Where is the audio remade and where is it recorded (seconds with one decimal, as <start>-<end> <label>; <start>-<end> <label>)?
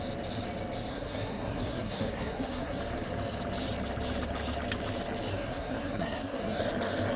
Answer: 0.0-0.9 recorded; 0.9-2.8 remade; 2.8-5.3 recorded; 5.3-6.6 remade; 6.6-7.2 recorded